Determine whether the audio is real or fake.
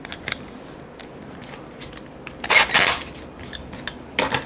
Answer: real